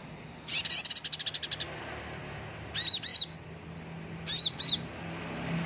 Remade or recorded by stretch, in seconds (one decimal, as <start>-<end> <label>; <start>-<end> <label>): 0.0-5.7 recorded